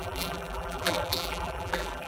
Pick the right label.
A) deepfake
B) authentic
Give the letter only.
A